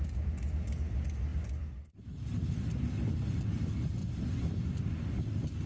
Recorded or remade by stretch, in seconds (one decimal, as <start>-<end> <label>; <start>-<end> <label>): 0.0-4.0 recorded; 4.0-4.6 remade; 4.6-5.7 recorded